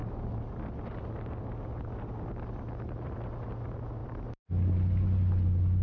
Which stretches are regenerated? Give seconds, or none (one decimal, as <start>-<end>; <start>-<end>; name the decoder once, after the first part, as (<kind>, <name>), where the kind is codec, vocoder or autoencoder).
none